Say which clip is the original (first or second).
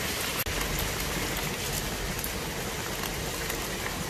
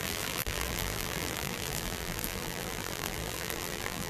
first